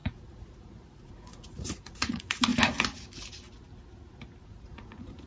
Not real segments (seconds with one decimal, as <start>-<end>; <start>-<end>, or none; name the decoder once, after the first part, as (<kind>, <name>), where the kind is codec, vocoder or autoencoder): 0.0-2.5 (vocoder, Vocos); 4.4-5.3